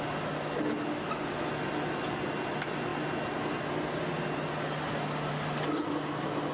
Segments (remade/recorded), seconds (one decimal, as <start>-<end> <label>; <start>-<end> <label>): 0.0-6.5 recorded